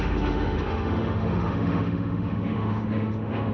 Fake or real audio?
fake